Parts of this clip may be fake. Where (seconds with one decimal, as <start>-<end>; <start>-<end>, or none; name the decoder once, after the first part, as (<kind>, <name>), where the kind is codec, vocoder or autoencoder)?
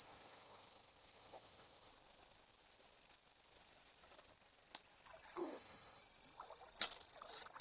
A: 0.0-1.9 (autoencoder, DAC-VAE); 5.4-6.0